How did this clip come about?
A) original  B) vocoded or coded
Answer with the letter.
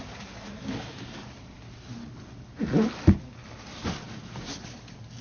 A